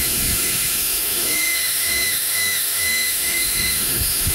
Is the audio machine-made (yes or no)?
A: yes